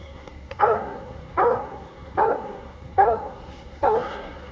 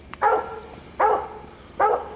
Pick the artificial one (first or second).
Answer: first